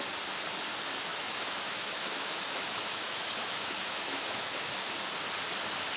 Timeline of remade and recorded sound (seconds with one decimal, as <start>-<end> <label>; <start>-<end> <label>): 0.0-1.1 recorded; 1.1-4.7 remade; 4.7-6.0 recorded